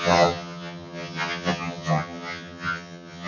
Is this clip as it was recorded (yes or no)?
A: no